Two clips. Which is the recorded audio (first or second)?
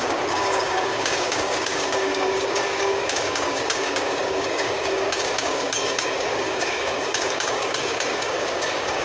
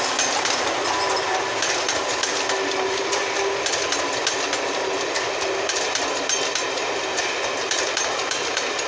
second